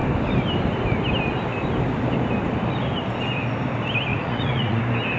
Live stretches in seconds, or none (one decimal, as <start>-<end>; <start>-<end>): 0.0-4.1; 4.8-5.2